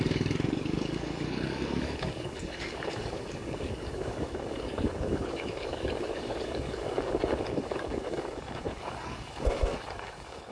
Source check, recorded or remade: remade